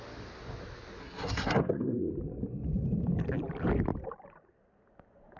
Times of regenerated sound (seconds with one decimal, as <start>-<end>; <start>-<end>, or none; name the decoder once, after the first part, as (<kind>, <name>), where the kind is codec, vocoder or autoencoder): 1.0-2.1 (codec, SNAC)